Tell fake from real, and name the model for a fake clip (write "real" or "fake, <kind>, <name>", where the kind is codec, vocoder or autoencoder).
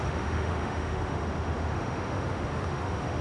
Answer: fake, autoencoder, DAC-VAE